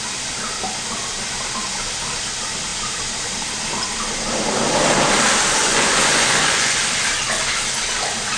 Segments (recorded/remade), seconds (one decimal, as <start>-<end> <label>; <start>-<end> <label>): 0.0-5.6 recorded; 5.6-6.8 remade; 6.8-8.4 recorded